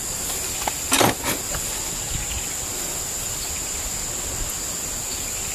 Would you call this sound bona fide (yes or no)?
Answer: yes